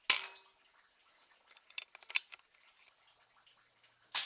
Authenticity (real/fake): real